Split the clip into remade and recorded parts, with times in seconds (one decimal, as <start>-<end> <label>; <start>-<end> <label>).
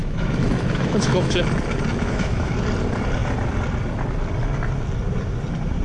0.0-1.4 remade; 1.4-1.9 recorded; 1.9-2.5 remade; 2.5-5.8 recorded